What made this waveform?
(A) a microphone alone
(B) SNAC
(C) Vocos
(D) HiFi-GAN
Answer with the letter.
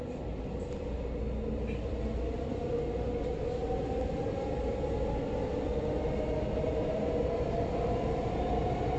A